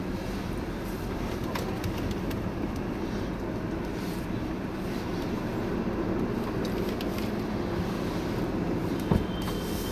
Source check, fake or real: real